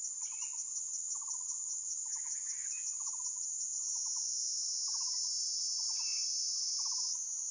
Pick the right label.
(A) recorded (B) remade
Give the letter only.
A